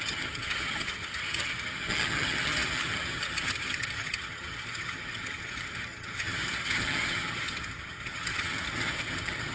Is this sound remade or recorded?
remade